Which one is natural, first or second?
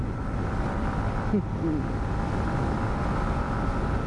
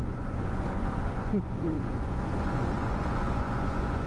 first